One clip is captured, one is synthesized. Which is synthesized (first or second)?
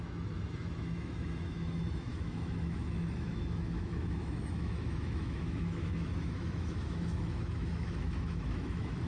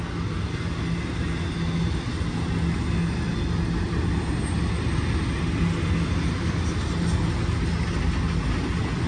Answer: first